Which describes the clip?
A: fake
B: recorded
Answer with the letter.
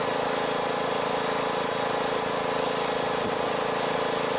B